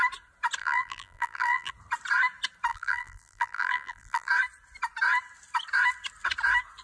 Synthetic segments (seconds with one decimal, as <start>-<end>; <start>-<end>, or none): 0.6-1.7; 2.7-4.3